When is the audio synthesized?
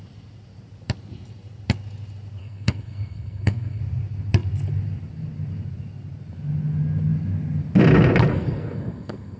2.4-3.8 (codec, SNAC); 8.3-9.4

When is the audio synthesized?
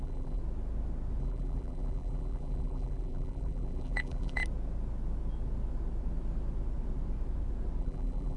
0.0-0.4 (vocoder, BigVGAN v2); 1.2-4.4; 7.8-8.4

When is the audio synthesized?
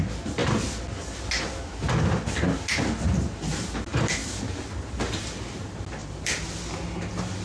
6.0-6.6 (vocoder, BigVGAN v2)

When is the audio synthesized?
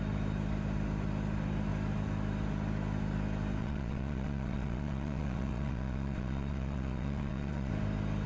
3.6-7.7 (vocoder, WaveNeXt)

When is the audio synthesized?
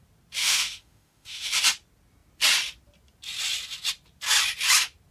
0.4-1.5 (autoencoder, DAC-VAE)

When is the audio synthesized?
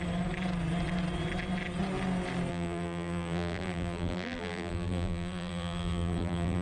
2.5-6.6 (vocoder, BigVGAN v2)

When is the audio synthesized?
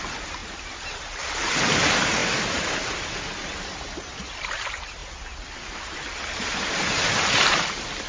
none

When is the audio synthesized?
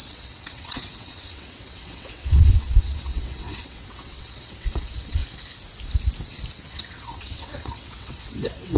0.0-5.2 (vocoder, WaveNeXt); 6.7-8.8